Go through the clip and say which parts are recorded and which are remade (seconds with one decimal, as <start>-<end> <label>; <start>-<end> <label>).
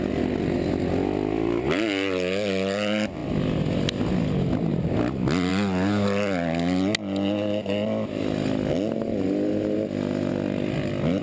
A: 0.0-11.2 recorded